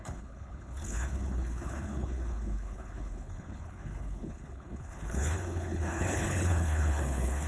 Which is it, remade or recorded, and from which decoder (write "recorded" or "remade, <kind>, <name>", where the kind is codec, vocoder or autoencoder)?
remade, codec, HILCodec